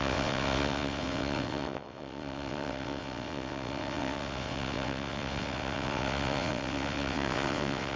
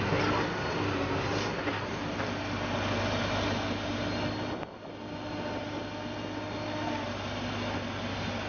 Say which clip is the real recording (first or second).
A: second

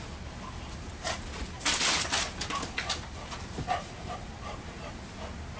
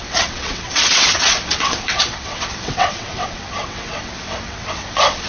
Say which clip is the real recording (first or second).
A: first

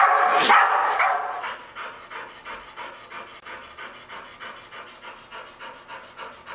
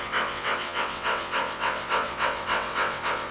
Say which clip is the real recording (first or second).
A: first